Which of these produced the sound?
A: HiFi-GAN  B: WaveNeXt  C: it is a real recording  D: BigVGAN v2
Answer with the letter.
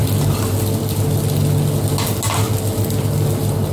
C